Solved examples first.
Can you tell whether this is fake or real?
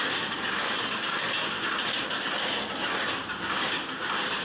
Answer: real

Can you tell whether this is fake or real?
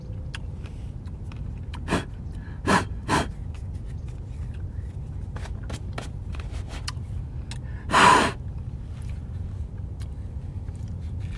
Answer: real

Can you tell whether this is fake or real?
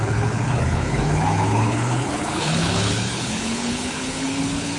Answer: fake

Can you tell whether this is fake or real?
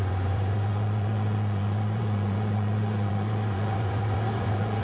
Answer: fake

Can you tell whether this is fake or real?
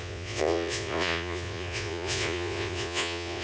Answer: fake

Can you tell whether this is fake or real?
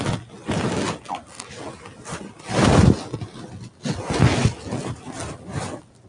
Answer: real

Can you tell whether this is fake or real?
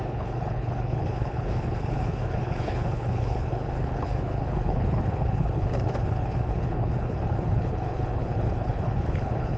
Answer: fake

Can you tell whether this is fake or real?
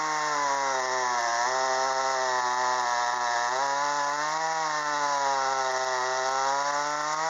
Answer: real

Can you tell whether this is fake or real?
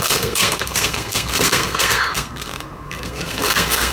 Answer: fake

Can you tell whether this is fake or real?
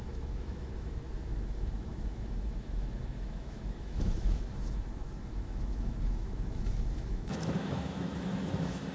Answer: fake